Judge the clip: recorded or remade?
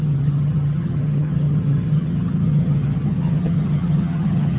remade